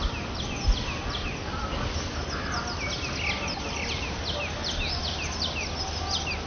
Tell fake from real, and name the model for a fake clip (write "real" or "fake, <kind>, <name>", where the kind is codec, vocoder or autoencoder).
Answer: real